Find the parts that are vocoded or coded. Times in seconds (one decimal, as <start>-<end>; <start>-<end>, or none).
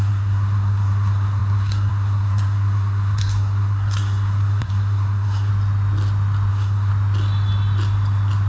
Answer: 0.0-5.5; 6.5-6.9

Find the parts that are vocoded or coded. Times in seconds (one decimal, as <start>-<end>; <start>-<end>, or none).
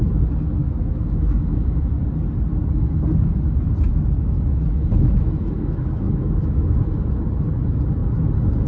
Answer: 0.6-1.9; 3.9-7.2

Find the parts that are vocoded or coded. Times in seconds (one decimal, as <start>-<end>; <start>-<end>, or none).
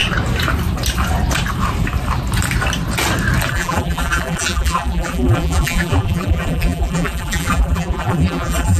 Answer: 3.5-8.8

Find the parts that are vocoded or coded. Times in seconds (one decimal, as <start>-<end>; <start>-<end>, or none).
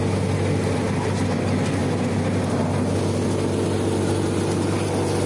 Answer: none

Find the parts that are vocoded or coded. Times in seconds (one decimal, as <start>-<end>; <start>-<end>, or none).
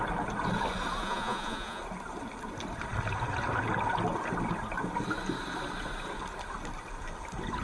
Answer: 1.0-1.8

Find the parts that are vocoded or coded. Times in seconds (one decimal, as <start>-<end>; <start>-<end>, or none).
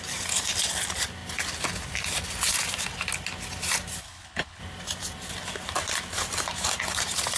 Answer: 4.0-4.6